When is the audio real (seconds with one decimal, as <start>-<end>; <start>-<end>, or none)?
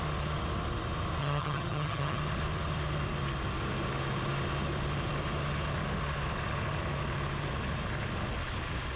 0.0-1.2; 2.2-9.0